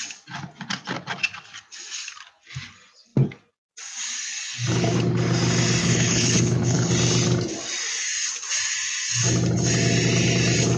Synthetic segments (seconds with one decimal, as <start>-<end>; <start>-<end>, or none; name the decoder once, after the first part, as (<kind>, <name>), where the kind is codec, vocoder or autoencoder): 5.8-6.9 (codec, HILCodec)

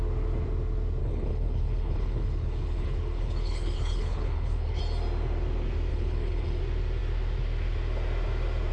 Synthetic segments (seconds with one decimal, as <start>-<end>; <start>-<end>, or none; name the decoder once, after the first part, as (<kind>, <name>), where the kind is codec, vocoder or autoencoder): 1.0-4.8 (codec, HILCodec); 5.9-6.6